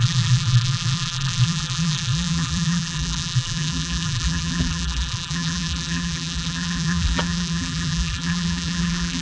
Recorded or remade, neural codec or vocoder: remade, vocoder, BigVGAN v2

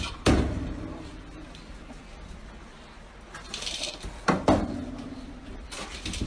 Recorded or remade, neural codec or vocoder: recorded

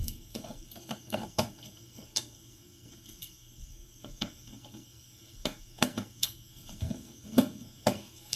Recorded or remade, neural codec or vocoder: remade, codec, SNAC